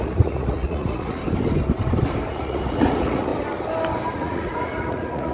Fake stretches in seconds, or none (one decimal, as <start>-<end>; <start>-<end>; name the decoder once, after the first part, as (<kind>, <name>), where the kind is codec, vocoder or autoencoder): 0.0-1.2 (vocoder, Vocos); 2.3-3.3; 4.1-5.3